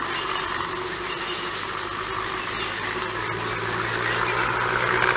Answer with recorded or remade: recorded